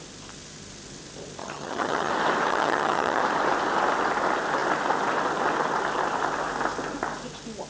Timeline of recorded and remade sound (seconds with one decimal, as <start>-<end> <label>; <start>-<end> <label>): 0.0-1.4 recorded; 1.4-2.1 remade; 2.1-2.5 recorded; 2.5-3.2 remade; 3.2-7.7 recorded